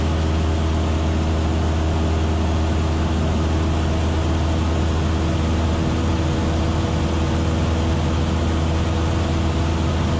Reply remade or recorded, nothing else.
recorded